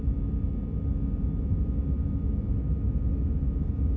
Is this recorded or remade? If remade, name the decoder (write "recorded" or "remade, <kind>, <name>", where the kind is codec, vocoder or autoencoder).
recorded